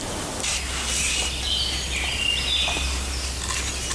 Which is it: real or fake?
real